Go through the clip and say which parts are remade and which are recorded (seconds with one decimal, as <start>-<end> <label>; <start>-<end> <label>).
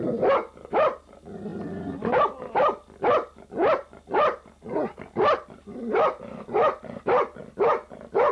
0.0-8.3 recorded